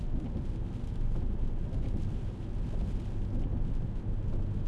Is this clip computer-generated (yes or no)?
no